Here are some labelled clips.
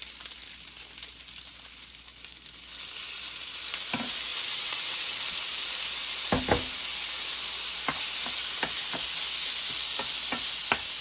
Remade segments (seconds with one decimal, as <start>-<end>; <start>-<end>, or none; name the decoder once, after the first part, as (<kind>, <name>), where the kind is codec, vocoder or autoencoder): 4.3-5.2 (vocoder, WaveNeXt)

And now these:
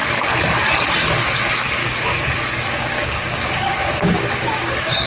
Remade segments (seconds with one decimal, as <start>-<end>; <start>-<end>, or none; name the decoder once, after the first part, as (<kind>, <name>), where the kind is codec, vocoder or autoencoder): 1.8-5.1 (codec, DAC)

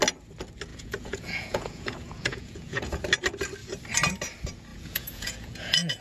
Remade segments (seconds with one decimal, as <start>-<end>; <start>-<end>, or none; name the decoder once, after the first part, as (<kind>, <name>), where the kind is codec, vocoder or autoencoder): 0.7-3.0 (vocoder, Vocos); 4.7-6.0

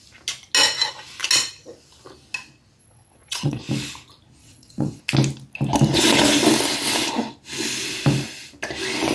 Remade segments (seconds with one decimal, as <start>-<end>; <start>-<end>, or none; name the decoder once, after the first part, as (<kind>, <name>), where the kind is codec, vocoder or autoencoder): 2.8-3.6 (vocoder, WaveNeXt); 4.4-5.0

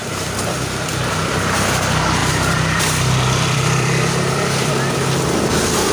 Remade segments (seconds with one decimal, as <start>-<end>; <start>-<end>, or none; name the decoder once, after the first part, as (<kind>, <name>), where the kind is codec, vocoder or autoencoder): 2.2-4.7 (vocoder, BigVGAN v2)